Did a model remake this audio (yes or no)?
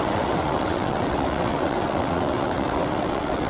yes